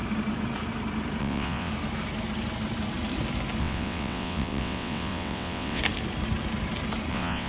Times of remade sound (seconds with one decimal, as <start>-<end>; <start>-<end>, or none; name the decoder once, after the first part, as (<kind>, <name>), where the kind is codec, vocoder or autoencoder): 1.2-1.7 (vocoder, WaveNeXt); 3.6-5.8; 7.1-7.5